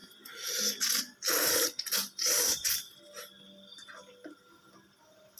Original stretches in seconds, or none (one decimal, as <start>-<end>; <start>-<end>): 0.0-2.2; 2.9-5.4